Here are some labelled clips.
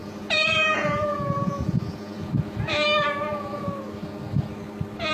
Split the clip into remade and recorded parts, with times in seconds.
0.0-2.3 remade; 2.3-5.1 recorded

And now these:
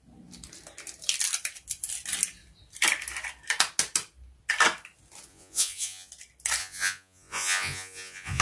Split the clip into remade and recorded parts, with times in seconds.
0.0-5.3 recorded; 5.3-6.1 remade; 6.1-6.6 recorded; 6.6-8.4 remade

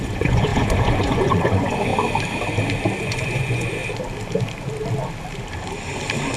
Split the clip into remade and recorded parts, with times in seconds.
0.0-1.9 remade; 1.9-3.0 recorded; 3.0-3.8 remade; 3.8-6.4 recorded

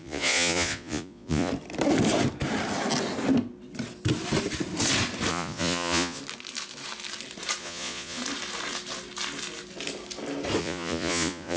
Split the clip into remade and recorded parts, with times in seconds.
0.0-1.5 remade; 1.5-5.3 recorded; 5.3-6.2 remade; 6.2-7.6 recorded; 7.6-8.2 remade; 8.2-10.6 recorded; 10.6-11.6 remade

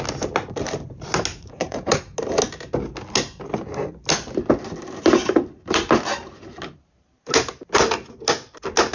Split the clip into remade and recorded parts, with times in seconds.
0.0-1.3 recorded; 1.3-2.0 remade; 2.0-8.9 recorded

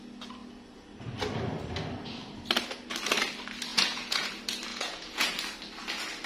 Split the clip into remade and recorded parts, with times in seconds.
0.0-3.7 recorded; 3.7-4.3 remade; 4.3-4.7 recorded; 4.7-5.3 remade; 5.3-6.3 recorded

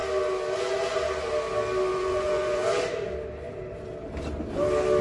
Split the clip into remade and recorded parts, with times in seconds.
0.0-1.9 recorded; 1.9-2.6 remade; 2.6-5.0 recorded

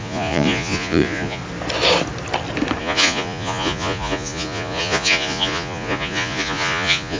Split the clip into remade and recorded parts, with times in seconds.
0.0-1.4 remade; 1.4-2.8 recorded; 2.8-7.2 remade